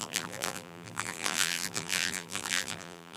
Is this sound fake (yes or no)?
yes